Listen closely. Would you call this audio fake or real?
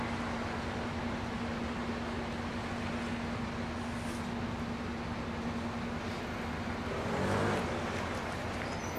real